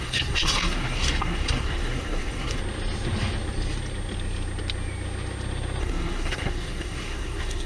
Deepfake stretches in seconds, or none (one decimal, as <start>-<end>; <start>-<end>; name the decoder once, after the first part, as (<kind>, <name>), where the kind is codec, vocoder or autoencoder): 0.0-2.6 (codec, SNAC); 5.8-7.7